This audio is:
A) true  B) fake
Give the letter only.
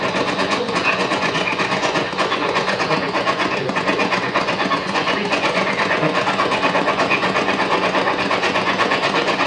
B